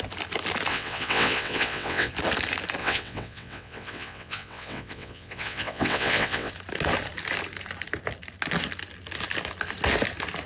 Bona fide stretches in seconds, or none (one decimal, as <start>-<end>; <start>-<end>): 0.0-0.7; 2.1-2.8; 6.5-10.5